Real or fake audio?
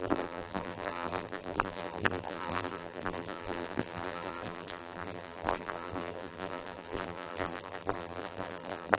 fake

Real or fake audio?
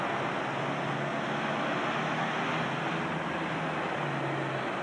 real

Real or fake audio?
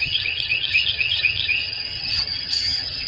fake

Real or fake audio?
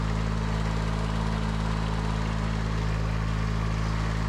real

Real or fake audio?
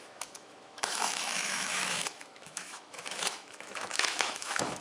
fake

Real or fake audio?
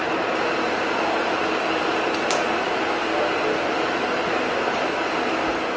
real